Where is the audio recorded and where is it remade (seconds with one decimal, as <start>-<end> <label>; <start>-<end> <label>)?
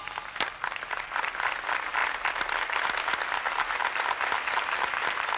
0.0-5.4 recorded